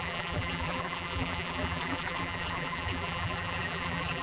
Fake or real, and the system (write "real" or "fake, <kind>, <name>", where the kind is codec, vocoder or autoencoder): fake, vocoder, BigVGAN v2